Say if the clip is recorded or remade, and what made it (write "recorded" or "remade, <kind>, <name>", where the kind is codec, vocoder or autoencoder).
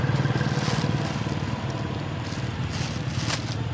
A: recorded